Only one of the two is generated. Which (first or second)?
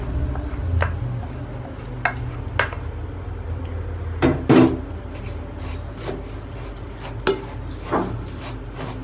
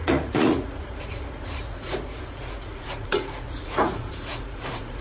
second